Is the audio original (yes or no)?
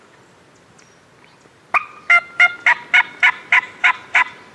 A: yes